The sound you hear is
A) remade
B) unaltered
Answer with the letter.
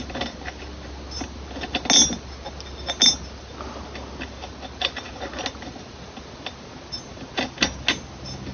B